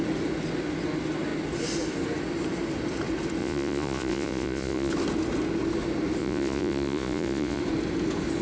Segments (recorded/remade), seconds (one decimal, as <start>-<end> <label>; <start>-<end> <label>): 0.0-3.4 recorded; 3.4-4.9 remade; 4.9-6.2 recorded; 6.2-7.6 remade; 7.6-8.4 recorded